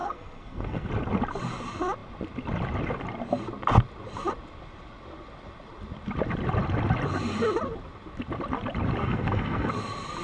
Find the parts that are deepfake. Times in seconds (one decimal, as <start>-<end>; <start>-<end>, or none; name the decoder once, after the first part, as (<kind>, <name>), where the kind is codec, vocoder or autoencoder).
0.0-0.9 (codec, SNAC); 9.0-9.7